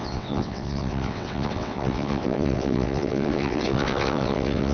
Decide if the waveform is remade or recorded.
remade